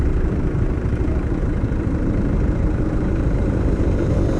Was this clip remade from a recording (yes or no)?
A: yes